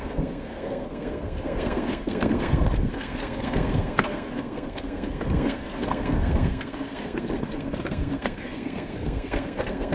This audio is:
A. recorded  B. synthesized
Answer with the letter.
B